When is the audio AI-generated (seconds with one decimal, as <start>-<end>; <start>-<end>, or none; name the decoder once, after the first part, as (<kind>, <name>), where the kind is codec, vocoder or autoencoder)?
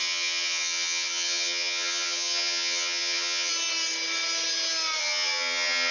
0.0-3.5 (vocoder, HiFi-GAN); 5.0-5.9